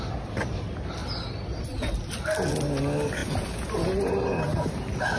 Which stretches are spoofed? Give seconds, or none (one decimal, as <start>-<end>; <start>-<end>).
none